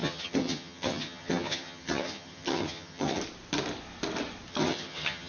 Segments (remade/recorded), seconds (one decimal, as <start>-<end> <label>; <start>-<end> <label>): 0.0-3.2 remade; 3.2-4.5 recorded; 4.5-5.3 remade